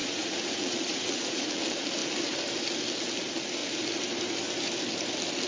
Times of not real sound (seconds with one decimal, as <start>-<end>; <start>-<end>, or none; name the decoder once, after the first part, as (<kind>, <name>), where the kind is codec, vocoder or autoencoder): 0.0-1.6 (vocoder, Vocos)